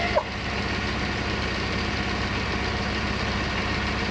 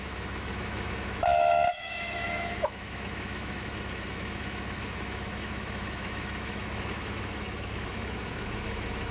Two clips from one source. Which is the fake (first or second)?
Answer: second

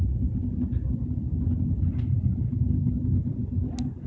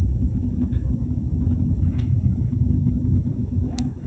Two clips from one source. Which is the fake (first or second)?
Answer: second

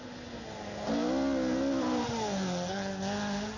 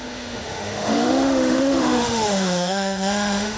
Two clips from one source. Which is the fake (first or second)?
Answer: second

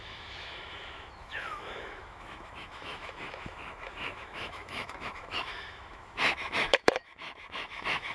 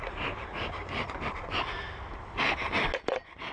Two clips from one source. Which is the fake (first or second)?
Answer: first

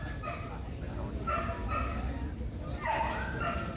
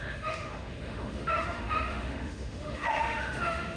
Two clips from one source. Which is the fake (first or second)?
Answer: second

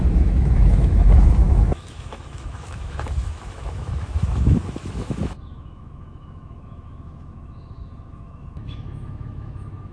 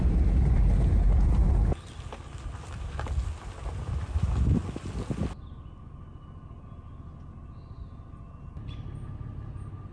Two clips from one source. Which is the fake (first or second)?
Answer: first